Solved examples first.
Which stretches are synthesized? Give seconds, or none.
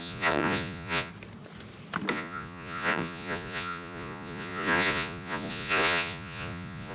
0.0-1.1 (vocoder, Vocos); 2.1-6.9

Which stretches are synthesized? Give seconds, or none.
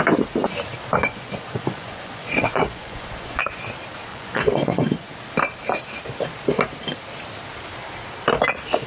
1.0-3.6 (vocoder, Vocos); 4.1-5.1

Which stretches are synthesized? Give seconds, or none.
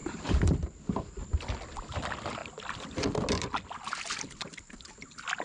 none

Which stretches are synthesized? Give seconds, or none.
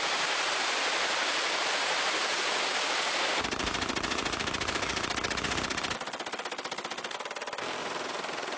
7.8-8.6 (vocoder, Vocos)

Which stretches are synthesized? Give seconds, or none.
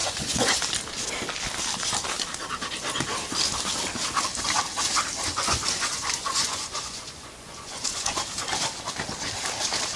0.0-0.6 (vocoder, Vocos); 5.3-8.2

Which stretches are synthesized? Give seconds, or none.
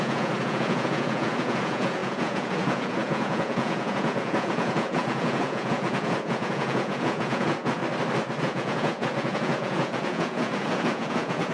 0.0-7.8 (vocoder, Vocos); 8.4-11.5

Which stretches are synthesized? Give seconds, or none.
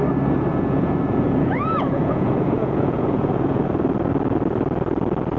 0.5-3.7 (vocoder, Vocos)